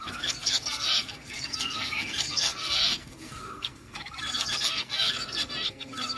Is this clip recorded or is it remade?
remade